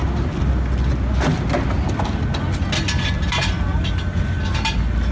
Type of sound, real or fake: real